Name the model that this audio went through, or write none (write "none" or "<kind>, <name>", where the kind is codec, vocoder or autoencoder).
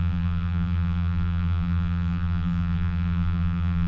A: vocoder, BigVGAN v2